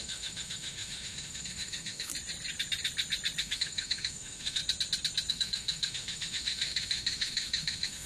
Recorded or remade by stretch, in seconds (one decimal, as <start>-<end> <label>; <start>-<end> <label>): 0.0-2.1 remade; 2.1-3.4 recorded; 3.4-4.6 remade; 4.6-5.3 recorded; 5.3-8.1 remade